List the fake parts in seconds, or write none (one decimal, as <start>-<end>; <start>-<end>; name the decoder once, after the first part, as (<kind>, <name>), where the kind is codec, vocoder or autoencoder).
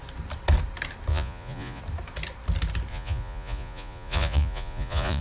1.1-1.8 (vocoder, Vocos); 2.9-5.2